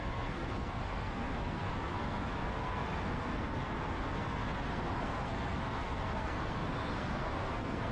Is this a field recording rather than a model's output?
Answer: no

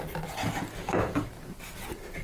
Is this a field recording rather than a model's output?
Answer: yes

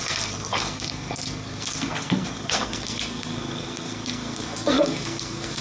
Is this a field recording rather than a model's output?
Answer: no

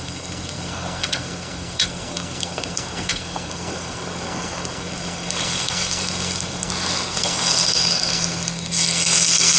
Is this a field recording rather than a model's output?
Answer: no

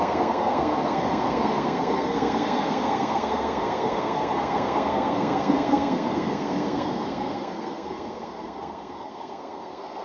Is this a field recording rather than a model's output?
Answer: no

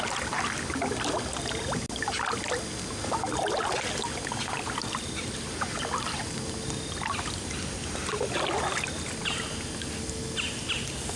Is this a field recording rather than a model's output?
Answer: yes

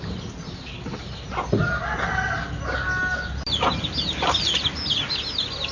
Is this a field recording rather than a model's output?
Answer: yes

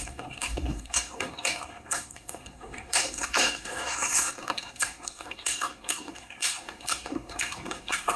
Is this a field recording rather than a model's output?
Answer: no